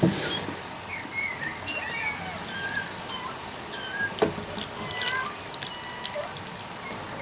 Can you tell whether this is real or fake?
real